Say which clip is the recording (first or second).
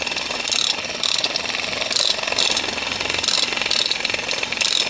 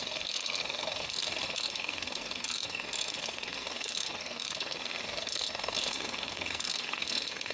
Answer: first